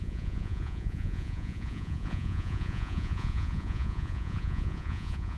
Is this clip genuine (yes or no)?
no